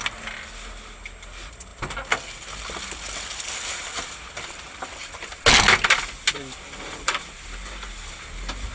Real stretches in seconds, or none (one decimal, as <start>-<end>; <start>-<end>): 0.0-8.7